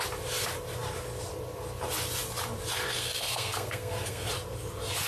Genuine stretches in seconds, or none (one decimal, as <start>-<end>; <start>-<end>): 0.0-3.0; 4.3-5.1